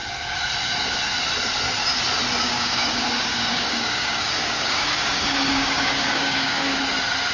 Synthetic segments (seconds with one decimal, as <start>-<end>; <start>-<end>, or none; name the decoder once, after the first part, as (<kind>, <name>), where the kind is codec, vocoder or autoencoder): 2.4-6.8 (codec, DAC)